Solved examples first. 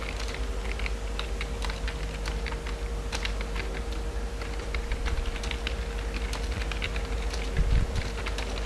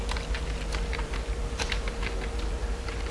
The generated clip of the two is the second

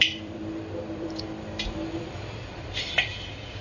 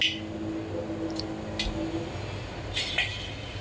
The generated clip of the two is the first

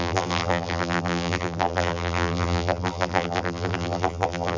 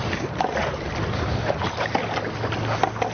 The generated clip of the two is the first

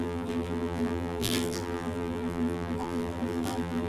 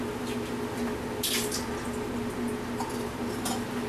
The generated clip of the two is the first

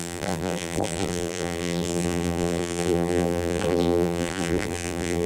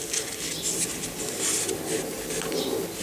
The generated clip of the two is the first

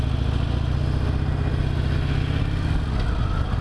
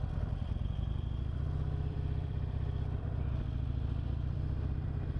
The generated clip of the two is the second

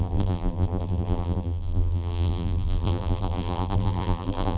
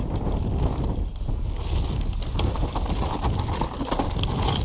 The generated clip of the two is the first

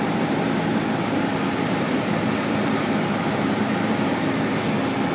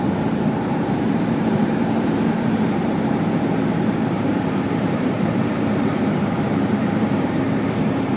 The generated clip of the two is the second